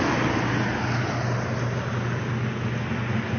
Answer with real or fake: real